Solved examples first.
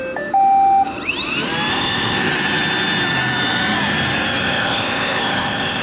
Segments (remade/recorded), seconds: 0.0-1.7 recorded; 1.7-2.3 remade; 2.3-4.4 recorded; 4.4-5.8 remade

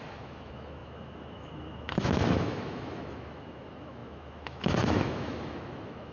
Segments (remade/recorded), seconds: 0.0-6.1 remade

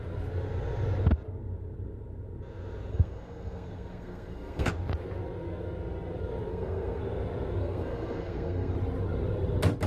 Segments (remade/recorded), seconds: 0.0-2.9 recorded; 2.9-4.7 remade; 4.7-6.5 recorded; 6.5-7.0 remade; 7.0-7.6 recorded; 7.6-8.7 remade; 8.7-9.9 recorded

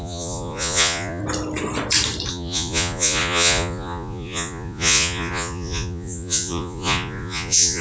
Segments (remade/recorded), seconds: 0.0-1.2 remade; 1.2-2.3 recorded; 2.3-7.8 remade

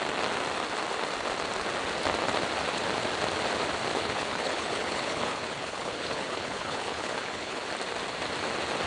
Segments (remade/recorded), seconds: 0.0-3.9 recorded; 3.9-7.7 remade; 7.7-8.9 recorded

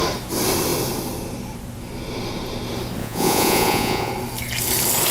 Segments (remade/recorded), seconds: 0.0-3.0 recorded; 3.0-4.1 remade; 4.1-5.1 recorded

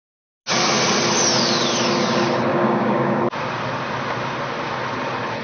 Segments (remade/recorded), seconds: 0.0-2.5 recorded; 2.5-3.2 remade; 3.2-5.4 recorded

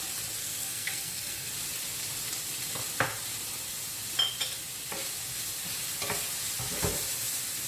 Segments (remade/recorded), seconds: 0.0-0.4 recorded; 0.4-1.5 remade; 1.5-7.7 recorded